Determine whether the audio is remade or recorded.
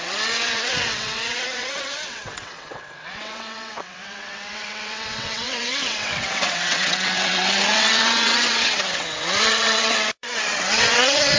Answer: remade